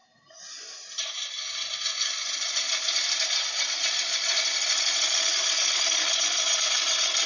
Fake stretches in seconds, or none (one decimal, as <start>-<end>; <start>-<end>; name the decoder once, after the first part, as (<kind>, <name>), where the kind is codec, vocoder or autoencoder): 4.0-7.3 (vocoder, BigVGAN v2)

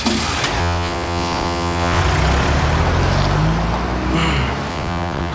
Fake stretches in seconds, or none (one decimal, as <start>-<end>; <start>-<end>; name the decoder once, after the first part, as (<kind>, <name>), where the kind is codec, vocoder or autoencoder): 0.6-2.0 (vocoder, WaveNeXt); 4.7-5.3